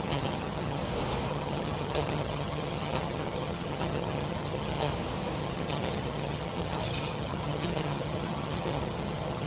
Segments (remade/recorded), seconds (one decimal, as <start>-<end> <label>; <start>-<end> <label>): 0.0-0.8 remade; 0.8-1.3 recorded; 1.3-4.9 remade; 4.9-5.4 recorded; 5.4-9.5 remade